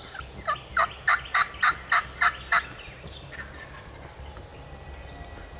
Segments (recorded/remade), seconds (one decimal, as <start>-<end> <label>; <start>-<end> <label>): 0.0-5.6 recorded